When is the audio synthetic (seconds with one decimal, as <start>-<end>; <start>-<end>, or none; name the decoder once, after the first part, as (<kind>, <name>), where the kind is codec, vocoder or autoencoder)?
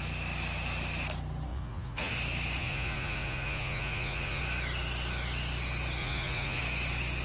1.5-2.1 (vocoder, Vocos); 2.6-4.4; 6.0-6.6